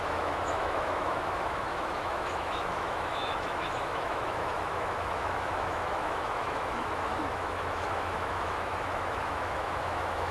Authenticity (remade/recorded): remade